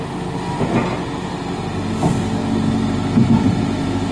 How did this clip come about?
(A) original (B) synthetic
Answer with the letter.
A